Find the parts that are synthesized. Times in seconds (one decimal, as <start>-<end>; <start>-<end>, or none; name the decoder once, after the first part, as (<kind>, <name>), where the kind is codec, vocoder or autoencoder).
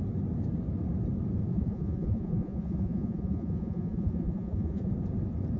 1.5-4.9 (vocoder, Vocos)